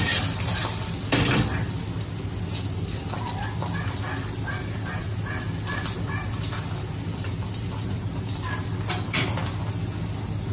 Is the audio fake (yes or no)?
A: no